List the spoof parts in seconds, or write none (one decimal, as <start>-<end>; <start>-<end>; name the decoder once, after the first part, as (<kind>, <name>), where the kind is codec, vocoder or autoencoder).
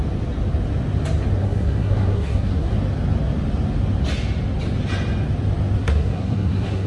1.4-2.7 (codec, SNAC); 5.8-6.9